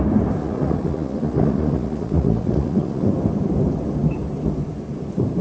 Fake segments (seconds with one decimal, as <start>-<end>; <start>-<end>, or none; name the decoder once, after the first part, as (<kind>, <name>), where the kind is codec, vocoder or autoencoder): 0.4-3.1 (vocoder, Vocos)